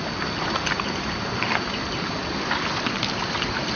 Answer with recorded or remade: recorded